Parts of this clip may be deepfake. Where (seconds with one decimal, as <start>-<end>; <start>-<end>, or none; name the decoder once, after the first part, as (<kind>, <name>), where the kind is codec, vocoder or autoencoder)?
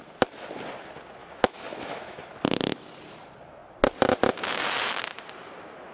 1.2-2.3 (autoencoder, DAC-VAE)